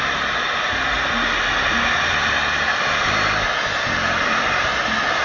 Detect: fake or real real